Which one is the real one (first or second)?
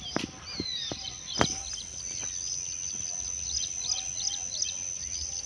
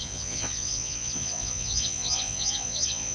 first